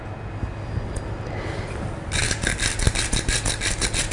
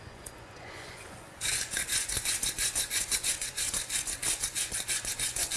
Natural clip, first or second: first